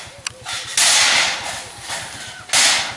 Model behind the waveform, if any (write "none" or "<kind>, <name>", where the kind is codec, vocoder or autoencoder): none